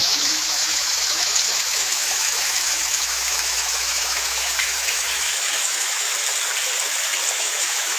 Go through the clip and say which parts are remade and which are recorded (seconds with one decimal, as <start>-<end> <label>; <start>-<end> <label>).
0.0-6.1 remade; 6.1-7.3 recorded; 7.3-8.0 remade